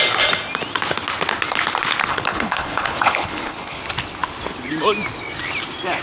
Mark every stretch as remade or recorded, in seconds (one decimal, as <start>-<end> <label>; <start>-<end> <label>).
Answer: 0.0-2.1 recorded; 2.1-3.8 remade; 3.8-6.0 recorded